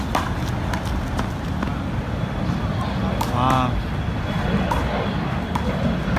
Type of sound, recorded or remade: recorded